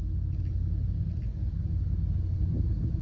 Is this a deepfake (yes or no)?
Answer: no